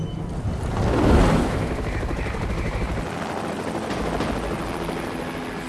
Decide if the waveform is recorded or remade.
recorded